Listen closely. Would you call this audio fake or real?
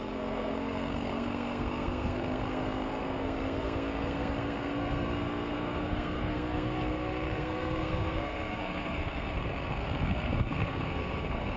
fake